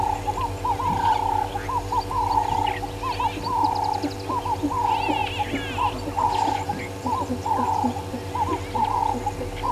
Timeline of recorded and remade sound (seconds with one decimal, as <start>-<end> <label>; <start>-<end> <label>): 0.0-9.7 recorded